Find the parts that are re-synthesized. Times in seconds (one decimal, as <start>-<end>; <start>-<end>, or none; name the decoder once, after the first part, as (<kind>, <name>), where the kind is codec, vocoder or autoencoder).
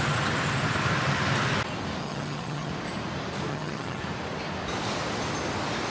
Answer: 2.0-2.7 (vocoder, HiFi-GAN); 3.5-4.0